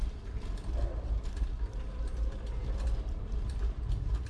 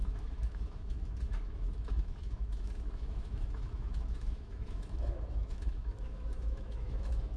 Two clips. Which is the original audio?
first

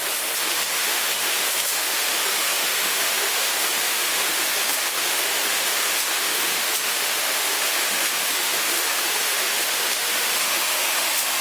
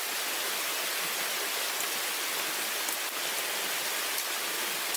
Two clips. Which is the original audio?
second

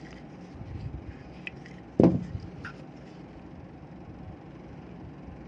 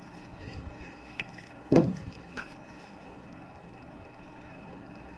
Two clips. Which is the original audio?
first